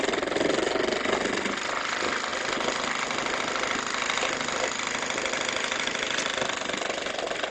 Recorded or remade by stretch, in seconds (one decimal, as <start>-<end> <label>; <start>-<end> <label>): 0.0-2.3 remade; 2.3-3.4 recorded; 3.4-7.5 remade